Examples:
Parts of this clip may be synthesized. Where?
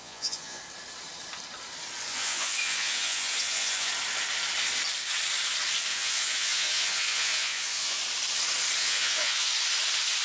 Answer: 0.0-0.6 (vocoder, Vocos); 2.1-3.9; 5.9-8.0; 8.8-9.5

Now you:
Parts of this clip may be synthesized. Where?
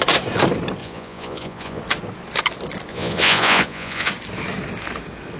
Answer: 0.8-1.8 (vocoder, Vocos); 2.9-4.1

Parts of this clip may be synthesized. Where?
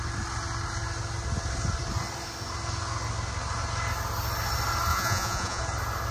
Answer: 4.9-5.6 (vocoder, Vocos)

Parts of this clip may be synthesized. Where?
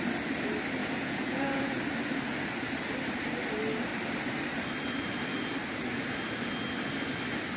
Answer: 0.8-1.8 (vocoder, Vocos)